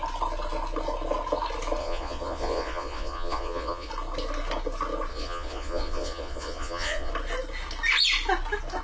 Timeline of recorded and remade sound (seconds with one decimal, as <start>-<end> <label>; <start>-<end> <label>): 0.0-1.8 recorded; 1.8-3.9 remade; 3.9-5.1 recorded; 5.1-7.1 remade; 7.1-8.8 recorded